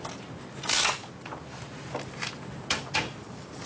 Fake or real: real